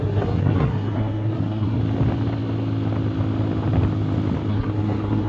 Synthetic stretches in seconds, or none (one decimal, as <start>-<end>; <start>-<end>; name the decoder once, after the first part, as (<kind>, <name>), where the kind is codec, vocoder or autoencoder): 0.0-1.8 (codec, SNAC); 4.5-5.3

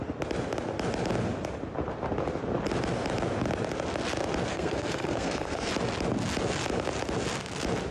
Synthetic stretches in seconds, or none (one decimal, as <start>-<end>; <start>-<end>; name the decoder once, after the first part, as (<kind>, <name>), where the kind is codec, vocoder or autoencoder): 4.5-5.7 (codec, SNAC)